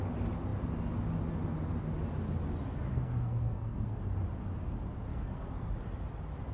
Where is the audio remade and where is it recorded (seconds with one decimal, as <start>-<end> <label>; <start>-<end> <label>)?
0.0-2.9 recorded; 2.9-4.0 remade; 4.0-5.1 recorded; 5.1-5.7 remade; 5.7-6.5 recorded